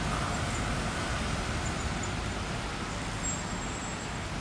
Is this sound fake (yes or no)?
no